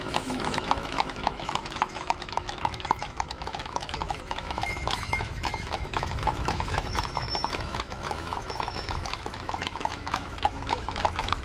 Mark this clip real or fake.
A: fake